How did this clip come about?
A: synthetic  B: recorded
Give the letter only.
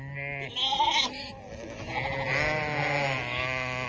B